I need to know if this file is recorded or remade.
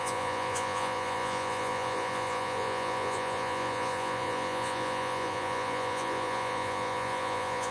remade